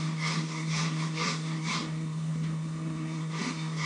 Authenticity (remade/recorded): remade